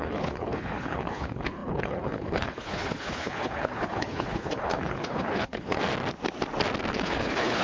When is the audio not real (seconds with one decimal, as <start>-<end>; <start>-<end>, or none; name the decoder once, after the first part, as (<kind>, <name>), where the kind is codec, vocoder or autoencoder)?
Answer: 0.0-5.8 (codec, HILCodec); 6.9-7.6